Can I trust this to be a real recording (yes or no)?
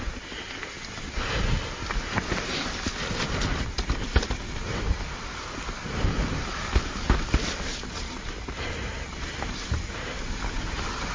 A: yes